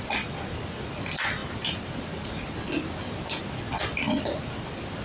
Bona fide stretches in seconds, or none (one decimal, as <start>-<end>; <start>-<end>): 0.0-5.0